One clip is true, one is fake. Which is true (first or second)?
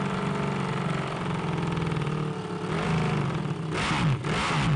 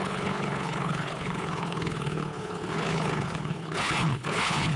first